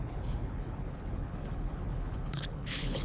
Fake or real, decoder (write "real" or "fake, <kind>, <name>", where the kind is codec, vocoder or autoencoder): fake, codec, HILCodec